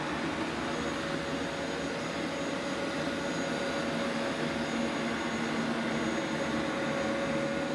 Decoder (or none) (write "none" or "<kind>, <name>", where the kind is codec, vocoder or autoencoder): none